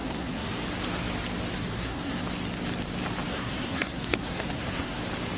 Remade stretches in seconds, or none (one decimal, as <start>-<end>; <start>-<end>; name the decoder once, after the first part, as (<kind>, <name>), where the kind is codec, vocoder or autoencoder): 0.0-0.5 (codec, SNAC); 1.5-2.2; 3.3-5.0